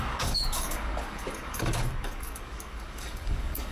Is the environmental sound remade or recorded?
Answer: remade